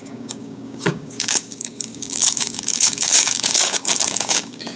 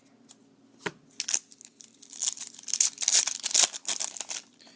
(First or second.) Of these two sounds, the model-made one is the first